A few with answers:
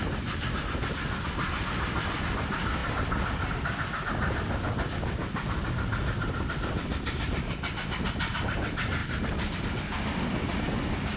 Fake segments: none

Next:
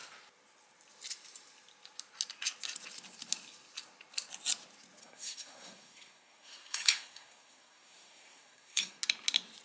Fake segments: 5.0-9.0 (codec, SNAC)

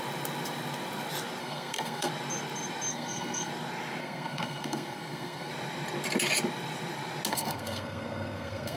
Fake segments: 1.4-2.1 (codec, SNAC); 2.9-3.5; 4.0-5.5; 7.3-8.8